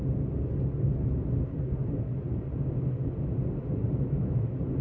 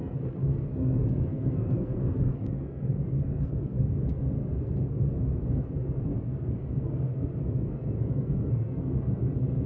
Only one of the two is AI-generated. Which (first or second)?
second